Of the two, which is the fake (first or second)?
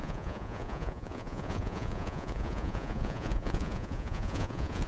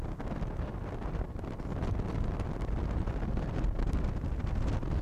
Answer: first